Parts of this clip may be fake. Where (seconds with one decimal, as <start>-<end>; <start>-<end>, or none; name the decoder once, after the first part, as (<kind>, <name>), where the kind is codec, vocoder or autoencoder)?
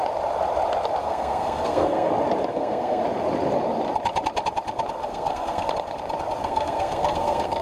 1.0-2.1 (codec, SNAC); 2.5-3.0; 5.0-5.7; 6.4-7.6